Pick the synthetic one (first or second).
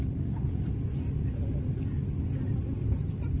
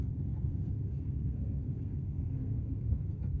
second